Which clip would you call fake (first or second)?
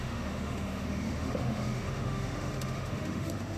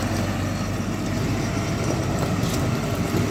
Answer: first